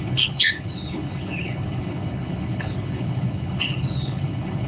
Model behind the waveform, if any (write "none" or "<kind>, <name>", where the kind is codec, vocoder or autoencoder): codec, HILCodec